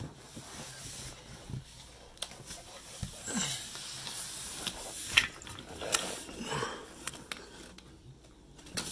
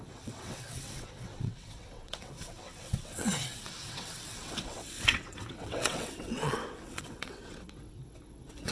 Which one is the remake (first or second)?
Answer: second